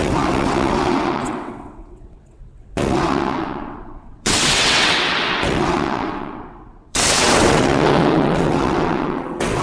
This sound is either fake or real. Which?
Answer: fake